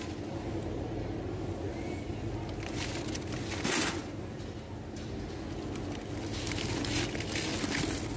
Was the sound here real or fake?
real